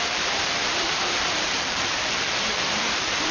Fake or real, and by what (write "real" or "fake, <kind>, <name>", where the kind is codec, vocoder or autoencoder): fake, vocoder, BigVGAN v2